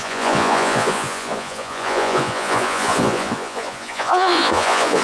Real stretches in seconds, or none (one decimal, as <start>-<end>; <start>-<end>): none